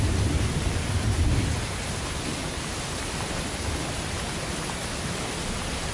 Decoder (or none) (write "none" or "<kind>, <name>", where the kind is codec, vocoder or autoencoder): none